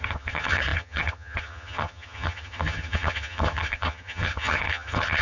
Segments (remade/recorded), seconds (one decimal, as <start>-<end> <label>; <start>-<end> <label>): 0.0-5.2 remade